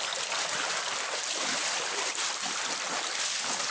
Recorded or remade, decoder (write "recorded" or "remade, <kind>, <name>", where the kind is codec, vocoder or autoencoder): recorded